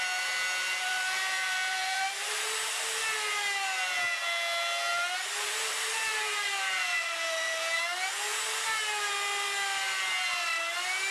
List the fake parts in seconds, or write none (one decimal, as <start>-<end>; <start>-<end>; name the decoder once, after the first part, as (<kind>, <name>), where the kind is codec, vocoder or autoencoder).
0.6-2.8 (vocoder, BigVGAN v2); 4.9-7.8